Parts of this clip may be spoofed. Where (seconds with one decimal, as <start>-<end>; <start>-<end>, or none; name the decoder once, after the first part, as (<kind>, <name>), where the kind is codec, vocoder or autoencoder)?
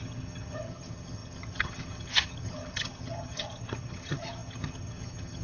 0.0-5.4 (vocoder, HiFi-GAN)